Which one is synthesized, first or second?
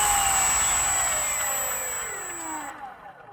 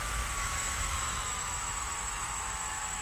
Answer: second